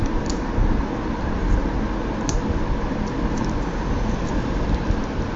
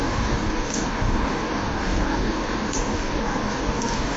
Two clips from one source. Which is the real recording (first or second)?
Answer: first